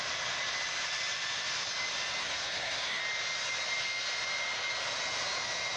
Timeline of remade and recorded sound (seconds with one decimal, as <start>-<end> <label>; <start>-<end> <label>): 0.0-2.2 recorded; 2.2-3.0 remade; 3.0-5.8 recorded